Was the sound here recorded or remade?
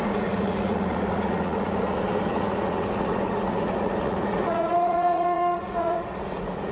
remade